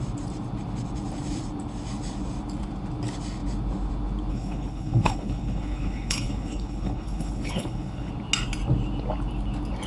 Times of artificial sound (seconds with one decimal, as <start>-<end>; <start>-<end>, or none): 4.3-8.1